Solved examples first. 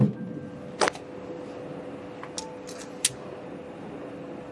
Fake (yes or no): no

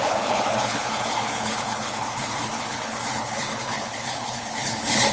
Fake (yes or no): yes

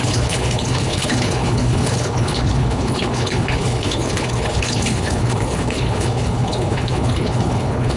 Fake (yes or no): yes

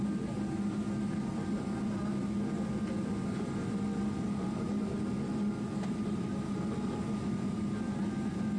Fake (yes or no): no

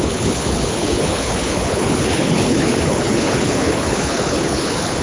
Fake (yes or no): yes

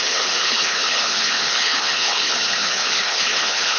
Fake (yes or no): yes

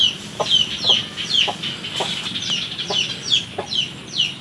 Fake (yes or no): no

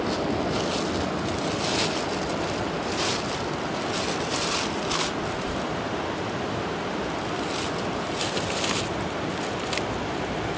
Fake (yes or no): no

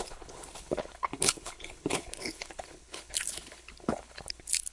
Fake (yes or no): yes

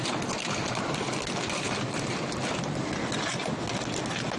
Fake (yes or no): no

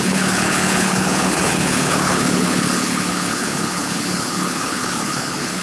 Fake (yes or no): yes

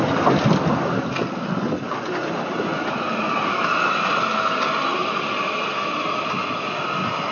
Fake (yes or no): no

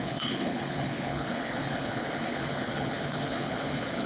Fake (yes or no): yes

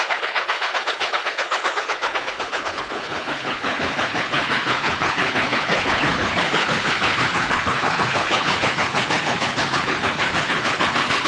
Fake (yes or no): yes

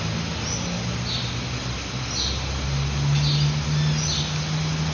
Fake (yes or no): no